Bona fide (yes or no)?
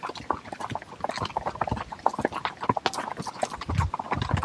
yes